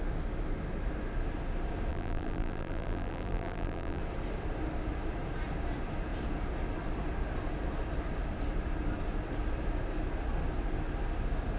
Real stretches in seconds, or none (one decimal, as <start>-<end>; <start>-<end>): 0.0-1.9; 4.0-11.6